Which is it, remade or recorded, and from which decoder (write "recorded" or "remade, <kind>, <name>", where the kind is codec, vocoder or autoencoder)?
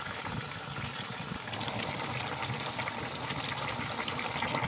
recorded